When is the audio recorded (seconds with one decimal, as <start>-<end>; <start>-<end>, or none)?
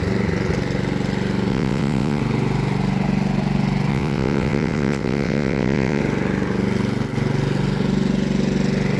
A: 0.0-1.5; 2.2-3.9; 6.0-9.0